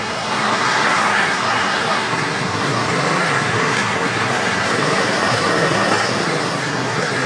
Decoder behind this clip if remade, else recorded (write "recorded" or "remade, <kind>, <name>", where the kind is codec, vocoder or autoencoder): remade, codec, SNAC